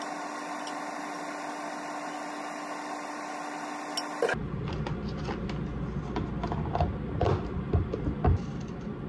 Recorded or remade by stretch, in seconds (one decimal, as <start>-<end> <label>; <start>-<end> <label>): 0.0-9.1 recorded